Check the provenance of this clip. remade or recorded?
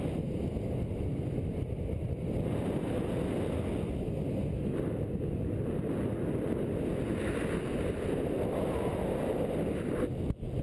recorded